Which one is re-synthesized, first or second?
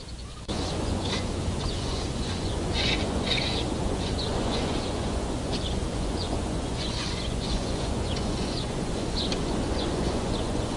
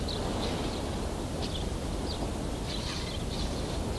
first